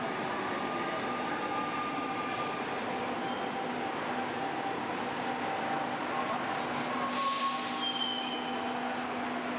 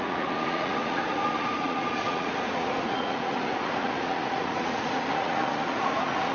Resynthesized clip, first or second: second